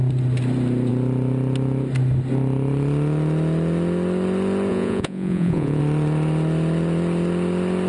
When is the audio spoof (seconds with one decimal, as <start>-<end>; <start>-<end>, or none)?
4.7-5.8